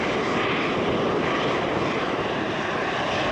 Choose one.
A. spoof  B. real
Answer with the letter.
B